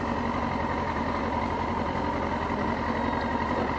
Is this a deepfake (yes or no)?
no